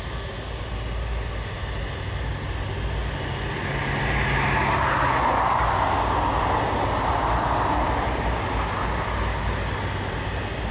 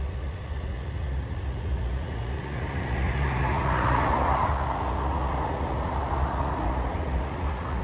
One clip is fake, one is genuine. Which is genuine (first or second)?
first